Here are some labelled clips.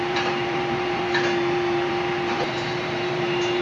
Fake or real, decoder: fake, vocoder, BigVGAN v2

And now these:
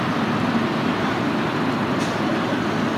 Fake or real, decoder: real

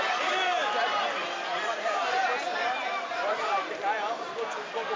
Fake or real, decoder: fake, vocoder, BigVGAN v2